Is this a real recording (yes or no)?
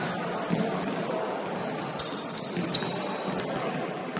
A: yes